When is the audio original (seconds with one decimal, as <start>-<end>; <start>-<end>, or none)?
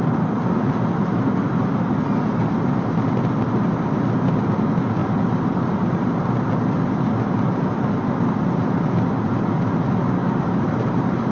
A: 0.0-5.0; 6.2-10.2